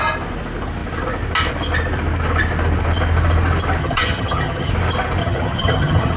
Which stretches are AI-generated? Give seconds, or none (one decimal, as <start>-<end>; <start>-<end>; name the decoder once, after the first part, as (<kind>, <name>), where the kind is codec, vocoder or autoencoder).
3.8-4.7 (vocoder, HiFi-GAN); 5.2-6.2